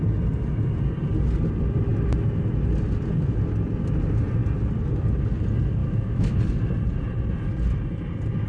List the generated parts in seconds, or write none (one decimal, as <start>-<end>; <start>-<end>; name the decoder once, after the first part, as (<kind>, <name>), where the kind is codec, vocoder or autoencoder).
5.8-6.4 (autoencoder, DAC-VAE)